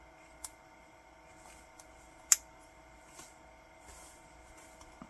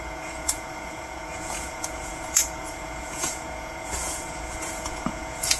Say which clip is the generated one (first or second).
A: second